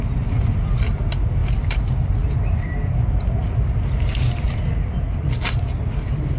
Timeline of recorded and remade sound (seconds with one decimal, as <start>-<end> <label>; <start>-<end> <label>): 0.0-6.4 recorded